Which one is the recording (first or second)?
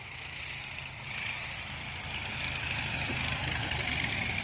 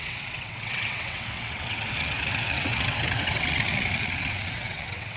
first